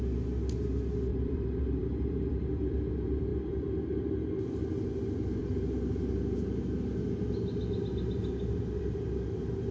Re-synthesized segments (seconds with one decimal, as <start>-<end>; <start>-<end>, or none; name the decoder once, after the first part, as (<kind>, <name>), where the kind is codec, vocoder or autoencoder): 1.1-2.8 (vocoder, BigVGAN v2); 3.3-4.1